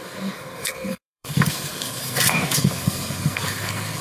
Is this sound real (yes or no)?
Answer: no